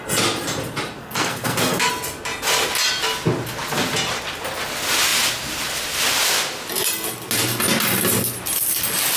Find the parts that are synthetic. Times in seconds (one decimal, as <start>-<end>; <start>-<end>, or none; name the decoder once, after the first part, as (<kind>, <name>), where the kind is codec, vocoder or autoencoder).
1.0-1.9 (codec, SNAC)